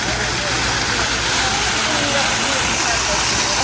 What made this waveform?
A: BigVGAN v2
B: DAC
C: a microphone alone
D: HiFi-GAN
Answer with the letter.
C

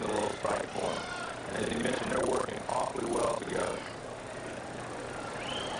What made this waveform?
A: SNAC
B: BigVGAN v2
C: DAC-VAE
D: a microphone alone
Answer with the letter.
B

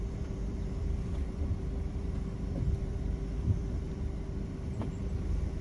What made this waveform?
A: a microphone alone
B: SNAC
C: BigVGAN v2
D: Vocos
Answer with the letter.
C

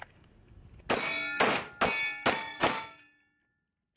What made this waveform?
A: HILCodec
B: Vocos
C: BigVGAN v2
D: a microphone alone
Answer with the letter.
D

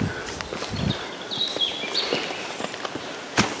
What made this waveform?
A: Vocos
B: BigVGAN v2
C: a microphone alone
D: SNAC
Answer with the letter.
C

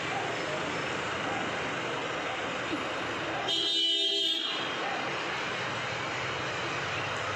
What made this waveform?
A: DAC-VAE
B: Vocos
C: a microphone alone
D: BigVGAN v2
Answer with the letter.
C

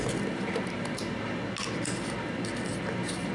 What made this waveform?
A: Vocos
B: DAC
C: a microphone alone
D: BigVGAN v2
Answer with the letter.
C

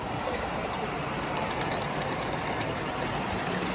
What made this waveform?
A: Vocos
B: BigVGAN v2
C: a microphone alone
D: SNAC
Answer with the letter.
B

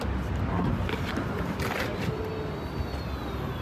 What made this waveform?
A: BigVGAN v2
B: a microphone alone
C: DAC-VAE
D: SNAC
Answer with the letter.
B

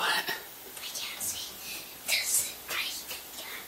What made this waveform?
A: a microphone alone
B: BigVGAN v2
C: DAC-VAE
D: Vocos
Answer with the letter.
A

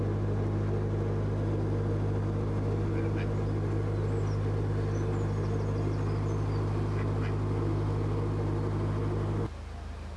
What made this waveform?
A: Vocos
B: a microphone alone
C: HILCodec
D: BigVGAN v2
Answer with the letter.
B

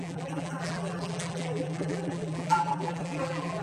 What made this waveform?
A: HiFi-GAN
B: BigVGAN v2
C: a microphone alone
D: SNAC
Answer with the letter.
B